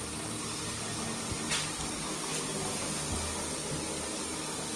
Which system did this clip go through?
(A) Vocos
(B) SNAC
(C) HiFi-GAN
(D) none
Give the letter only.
D